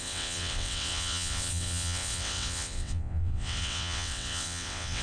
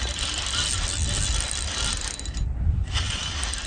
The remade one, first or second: first